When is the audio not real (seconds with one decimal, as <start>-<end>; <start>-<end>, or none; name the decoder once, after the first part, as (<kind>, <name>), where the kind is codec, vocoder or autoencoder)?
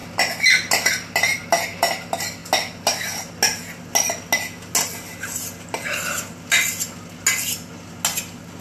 none